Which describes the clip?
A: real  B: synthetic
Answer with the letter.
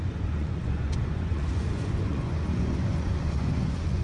B